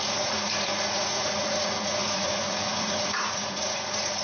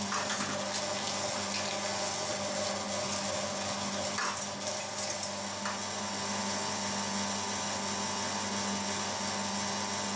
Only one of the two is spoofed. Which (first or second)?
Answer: first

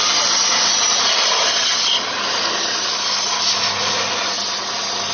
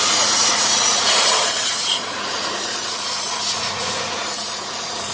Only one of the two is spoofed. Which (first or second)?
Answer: second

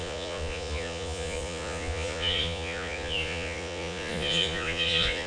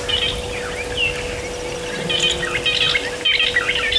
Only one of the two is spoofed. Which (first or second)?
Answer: first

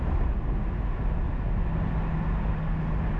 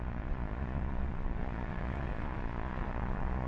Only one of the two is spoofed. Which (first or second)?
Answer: second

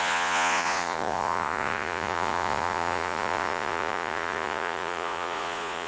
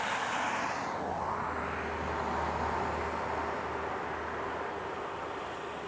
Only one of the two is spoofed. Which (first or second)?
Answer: first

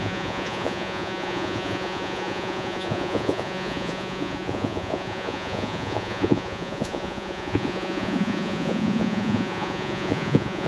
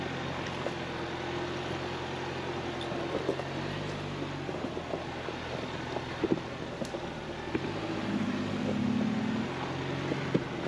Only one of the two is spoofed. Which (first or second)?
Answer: first